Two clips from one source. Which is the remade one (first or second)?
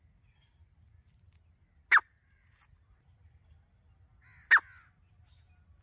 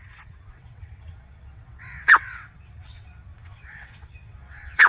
second